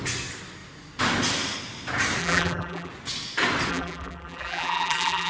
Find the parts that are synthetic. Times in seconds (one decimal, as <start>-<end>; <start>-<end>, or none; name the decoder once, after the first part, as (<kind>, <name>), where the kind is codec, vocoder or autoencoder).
2.2-2.9 (vocoder, BigVGAN v2); 3.7-5.3